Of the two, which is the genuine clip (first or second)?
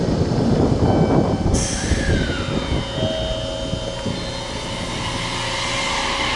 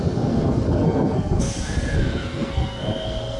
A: first